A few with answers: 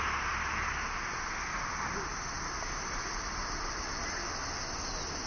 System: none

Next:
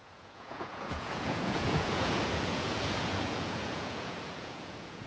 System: vocoder, Vocos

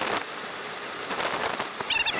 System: none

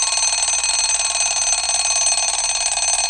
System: none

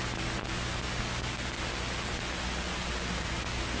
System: none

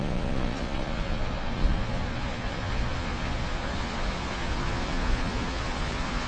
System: vocoder, Vocos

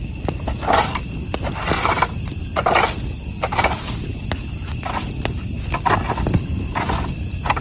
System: none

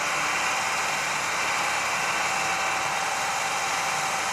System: none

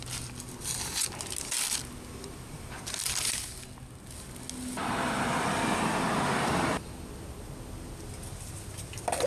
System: none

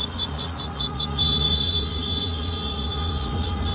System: vocoder, Vocos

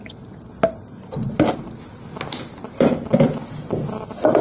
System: none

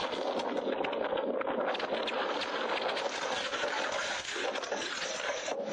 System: none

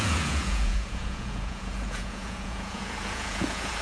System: vocoder, Vocos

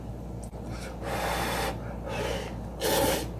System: none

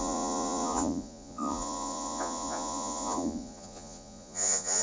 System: vocoder, Vocos